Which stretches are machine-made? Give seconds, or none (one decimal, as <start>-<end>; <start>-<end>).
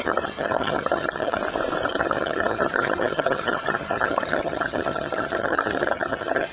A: 0.0-1.4; 1.9-6.5